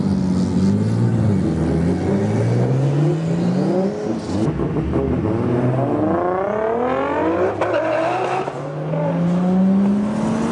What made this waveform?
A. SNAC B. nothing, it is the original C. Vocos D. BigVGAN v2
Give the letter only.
B